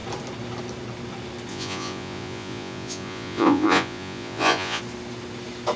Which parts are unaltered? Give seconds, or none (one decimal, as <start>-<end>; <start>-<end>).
0.0-1.5; 4.8-5.8